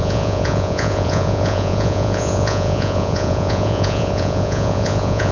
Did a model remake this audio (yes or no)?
yes